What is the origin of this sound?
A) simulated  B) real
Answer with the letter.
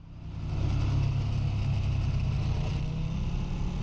B